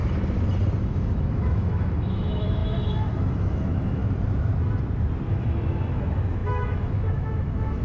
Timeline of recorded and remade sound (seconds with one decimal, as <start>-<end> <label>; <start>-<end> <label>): 0.0-0.8 recorded; 0.8-4.0 remade; 4.0-5.3 recorded; 5.3-7.8 remade